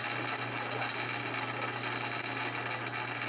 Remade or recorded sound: recorded